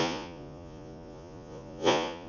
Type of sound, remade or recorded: remade